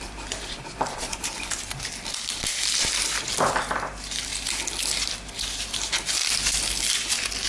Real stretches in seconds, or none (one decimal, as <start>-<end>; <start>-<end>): 0.0-7.5